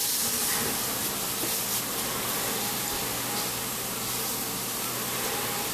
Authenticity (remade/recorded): recorded